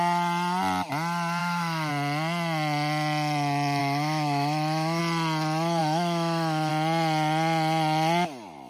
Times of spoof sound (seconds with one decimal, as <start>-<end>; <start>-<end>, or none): 1.4-1.9; 3.8-5.0; 5.8-6.7